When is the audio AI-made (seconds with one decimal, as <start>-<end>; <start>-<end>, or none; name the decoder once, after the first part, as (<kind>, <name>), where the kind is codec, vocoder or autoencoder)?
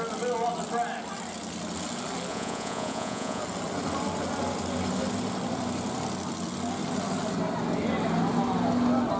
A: 2.3-3.4 (vocoder, Vocos)